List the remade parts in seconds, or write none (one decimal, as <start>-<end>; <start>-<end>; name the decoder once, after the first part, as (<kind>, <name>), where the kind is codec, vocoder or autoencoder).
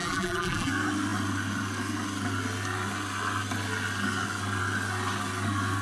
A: 0.0-0.7 (vocoder, BigVGAN v2)